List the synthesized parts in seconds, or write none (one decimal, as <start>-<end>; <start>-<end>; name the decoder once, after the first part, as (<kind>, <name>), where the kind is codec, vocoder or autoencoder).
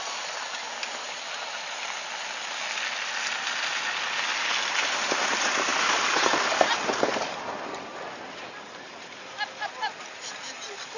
none